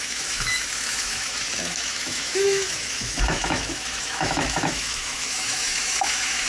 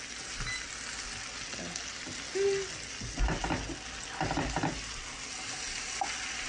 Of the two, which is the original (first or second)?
second